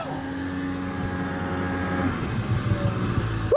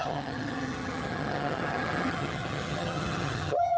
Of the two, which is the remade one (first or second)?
second